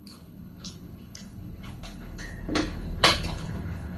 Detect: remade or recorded remade